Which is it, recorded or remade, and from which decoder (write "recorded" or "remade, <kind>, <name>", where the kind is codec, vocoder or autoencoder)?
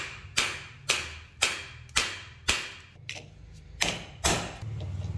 recorded